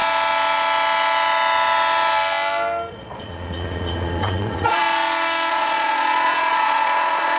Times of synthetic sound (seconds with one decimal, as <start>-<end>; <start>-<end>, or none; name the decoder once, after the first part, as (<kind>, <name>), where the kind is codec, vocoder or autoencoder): 2.9-4.8 (vocoder, Vocos); 5.5-7.4